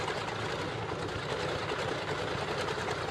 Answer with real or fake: real